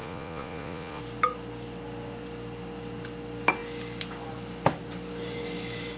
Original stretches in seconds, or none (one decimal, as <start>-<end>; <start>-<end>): 1.0-6.0